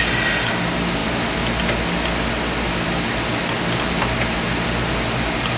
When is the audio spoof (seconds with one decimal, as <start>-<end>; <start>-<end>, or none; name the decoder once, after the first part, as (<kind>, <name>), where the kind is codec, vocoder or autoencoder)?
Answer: none